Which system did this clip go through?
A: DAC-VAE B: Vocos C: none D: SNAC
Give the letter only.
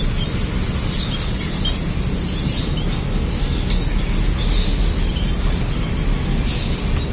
C